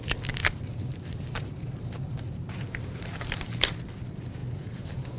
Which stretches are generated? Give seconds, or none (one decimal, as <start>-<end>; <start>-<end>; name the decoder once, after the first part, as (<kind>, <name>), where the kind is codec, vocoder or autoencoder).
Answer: 0.4-3.5 (vocoder, BigVGAN v2); 4.4-5.2